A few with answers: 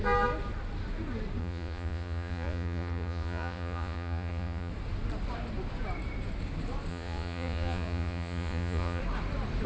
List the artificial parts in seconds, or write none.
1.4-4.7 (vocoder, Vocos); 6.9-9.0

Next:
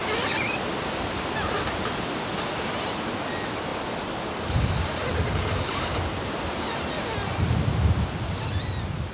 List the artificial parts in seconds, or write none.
none